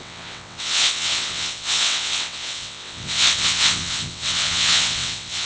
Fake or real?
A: fake